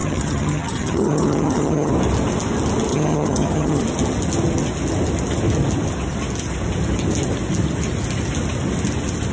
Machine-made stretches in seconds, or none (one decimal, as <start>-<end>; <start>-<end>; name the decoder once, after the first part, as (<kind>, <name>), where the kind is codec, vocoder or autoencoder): 0.0-1.9 (vocoder, HiFi-GAN); 2.9-3.8